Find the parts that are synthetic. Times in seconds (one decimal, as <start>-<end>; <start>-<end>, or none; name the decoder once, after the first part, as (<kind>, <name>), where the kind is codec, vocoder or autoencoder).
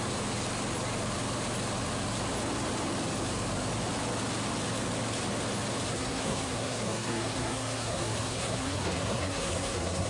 5.9-10.1 (codec, SNAC)